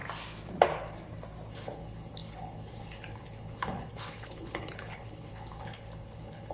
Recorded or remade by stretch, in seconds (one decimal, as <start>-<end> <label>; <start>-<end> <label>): 0.0-1.5 recorded; 1.5-6.5 remade